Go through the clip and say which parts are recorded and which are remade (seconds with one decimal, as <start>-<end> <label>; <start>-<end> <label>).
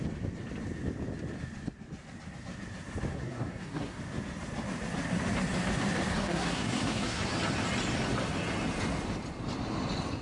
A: 0.0-3.1 recorded; 3.1-4.0 remade; 4.0-6.1 recorded; 6.1-7.3 remade; 7.3-10.2 recorded